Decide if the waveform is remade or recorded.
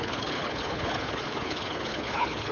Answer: remade